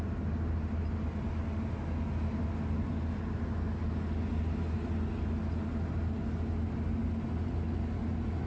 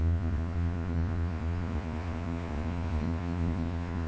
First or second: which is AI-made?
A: second